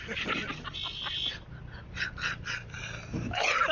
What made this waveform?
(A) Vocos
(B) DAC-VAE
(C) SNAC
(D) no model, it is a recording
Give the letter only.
D